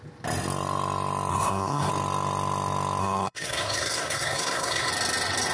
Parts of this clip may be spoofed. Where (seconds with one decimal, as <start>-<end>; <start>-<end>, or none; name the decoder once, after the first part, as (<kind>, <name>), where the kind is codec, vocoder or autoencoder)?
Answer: 1.3-1.9 (codec, SNAC); 3.0-4.9